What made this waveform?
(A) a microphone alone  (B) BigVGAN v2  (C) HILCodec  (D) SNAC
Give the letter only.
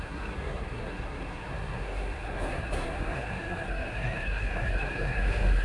D